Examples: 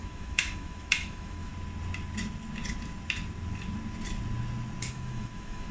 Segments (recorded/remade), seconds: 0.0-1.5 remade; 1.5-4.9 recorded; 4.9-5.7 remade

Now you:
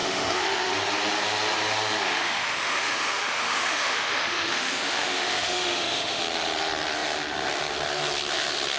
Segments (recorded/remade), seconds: 0.0-0.7 remade; 0.7-2.1 recorded; 2.1-6.2 remade; 6.2-8.8 recorded

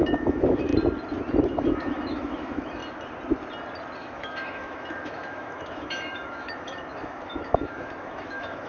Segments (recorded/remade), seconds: 0.0-0.7 remade; 0.7-1.4 recorded; 1.4-2.8 remade; 2.8-4.0 recorded; 4.0-8.7 remade

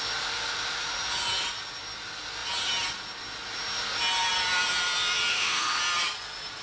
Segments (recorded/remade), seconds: 0.0-5.3 recorded; 5.3-5.8 remade; 5.8-6.6 recorded

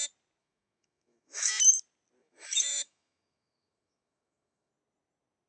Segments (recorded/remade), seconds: 0.0-0.4 recorded; 0.4-1.5 remade; 1.5-2.2 recorded; 2.2-4.7 remade; 4.7-5.5 recorded

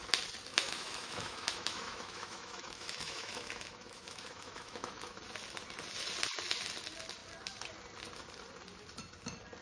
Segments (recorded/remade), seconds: 0.0-0.5 recorded; 0.5-5.2 remade; 5.2-9.6 recorded